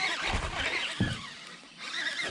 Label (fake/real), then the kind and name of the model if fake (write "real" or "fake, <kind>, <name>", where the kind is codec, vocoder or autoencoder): real